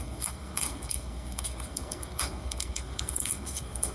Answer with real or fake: fake